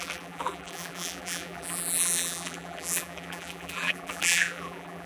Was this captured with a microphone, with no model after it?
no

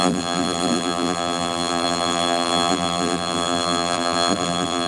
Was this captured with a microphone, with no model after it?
no